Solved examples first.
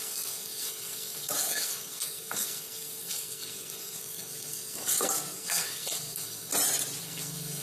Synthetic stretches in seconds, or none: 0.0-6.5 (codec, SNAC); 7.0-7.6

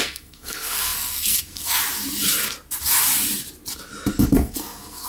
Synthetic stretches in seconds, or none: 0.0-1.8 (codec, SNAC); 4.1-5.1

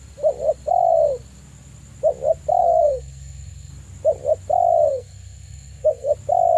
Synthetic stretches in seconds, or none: 2.6-3.7 (codec, SNAC); 4.9-6.1

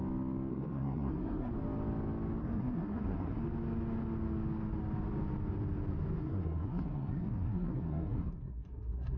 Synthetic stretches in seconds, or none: 0.5-1.5 (codec, SNAC); 2.4-3.4; 6.2-9.2